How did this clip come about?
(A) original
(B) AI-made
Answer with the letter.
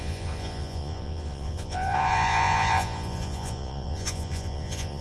B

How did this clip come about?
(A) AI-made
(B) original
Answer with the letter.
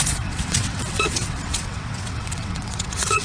A